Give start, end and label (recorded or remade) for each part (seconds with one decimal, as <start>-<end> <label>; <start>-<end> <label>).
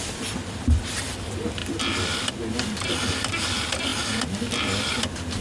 0.0-5.4 recorded